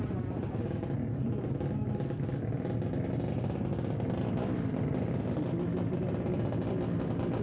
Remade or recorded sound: recorded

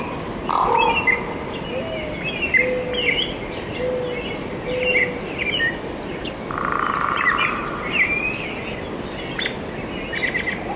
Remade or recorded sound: recorded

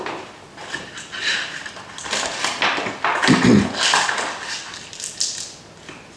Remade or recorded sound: recorded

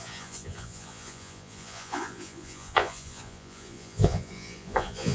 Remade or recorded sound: remade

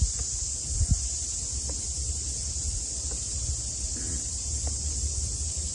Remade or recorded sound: recorded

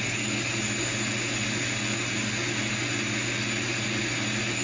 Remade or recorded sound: recorded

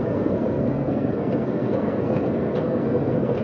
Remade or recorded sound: remade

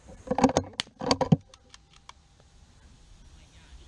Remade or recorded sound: recorded